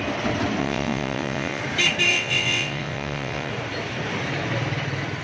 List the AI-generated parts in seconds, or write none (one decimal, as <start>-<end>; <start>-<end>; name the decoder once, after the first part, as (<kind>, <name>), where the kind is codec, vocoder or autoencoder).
0.6-1.6 (vocoder, WaveNeXt); 2.1-3.5